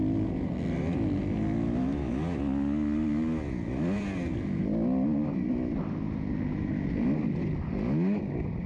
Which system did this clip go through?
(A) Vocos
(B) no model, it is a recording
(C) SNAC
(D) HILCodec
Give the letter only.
B